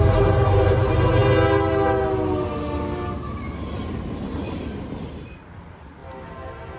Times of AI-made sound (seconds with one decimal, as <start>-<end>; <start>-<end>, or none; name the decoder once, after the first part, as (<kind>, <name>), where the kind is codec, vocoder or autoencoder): none